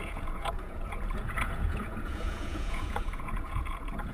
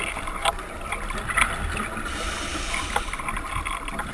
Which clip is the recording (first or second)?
second